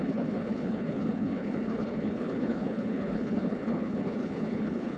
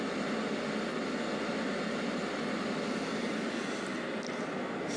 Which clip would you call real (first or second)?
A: second